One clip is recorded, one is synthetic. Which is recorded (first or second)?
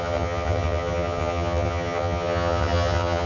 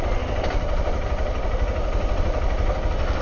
second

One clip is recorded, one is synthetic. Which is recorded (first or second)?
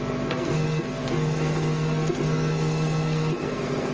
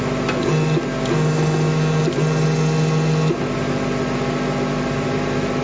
second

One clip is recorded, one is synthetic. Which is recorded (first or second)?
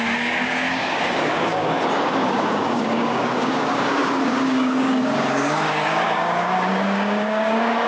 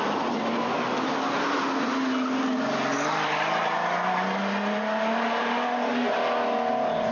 second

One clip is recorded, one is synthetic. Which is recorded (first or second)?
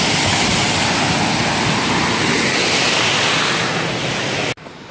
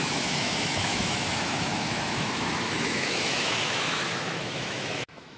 first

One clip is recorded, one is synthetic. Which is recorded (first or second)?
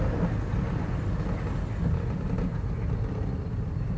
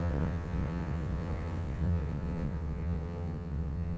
first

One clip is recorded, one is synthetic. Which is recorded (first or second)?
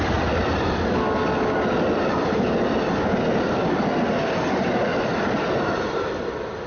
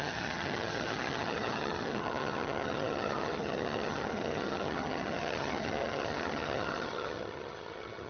first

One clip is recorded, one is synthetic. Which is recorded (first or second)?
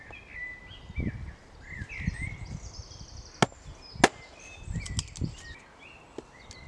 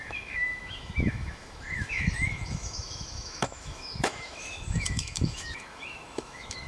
first